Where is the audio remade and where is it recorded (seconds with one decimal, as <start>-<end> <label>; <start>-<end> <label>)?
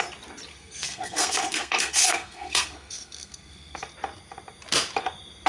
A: 0.0-0.5 recorded; 0.5-3.8 remade; 3.8-5.5 recorded